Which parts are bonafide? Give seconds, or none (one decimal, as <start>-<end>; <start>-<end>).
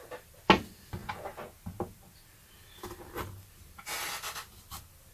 0.0-5.1